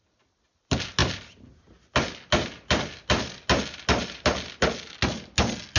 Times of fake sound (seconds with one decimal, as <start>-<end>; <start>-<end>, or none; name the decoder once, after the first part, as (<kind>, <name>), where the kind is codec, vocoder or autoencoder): none